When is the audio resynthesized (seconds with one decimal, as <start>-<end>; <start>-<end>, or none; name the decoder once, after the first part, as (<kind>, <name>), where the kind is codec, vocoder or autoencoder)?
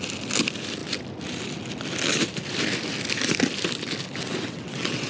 4.2-5.1 (vocoder, WaveNeXt)